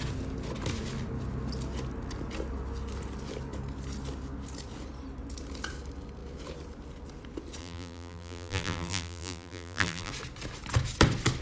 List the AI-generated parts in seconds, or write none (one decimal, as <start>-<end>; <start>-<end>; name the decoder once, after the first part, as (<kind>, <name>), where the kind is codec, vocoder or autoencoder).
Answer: 7.6-10.1 (vocoder, BigVGAN v2)